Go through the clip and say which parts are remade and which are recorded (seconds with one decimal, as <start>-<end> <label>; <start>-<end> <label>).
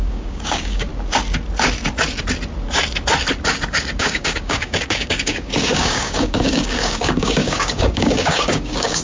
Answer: 0.0-0.9 remade; 0.9-4.0 recorded; 4.0-9.0 remade